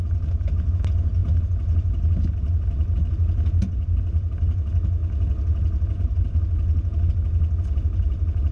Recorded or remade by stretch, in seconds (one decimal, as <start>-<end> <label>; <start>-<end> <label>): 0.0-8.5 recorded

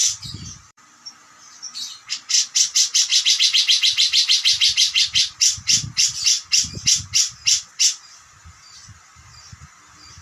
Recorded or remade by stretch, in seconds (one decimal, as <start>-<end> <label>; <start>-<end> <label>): 0.0-1.1 remade; 1.1-10.2 recorded

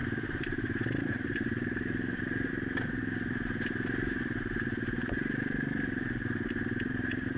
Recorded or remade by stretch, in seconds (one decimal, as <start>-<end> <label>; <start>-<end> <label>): 0.0-3.0 remade; 3.0-6.9 recorded; 6.9-7.4 remade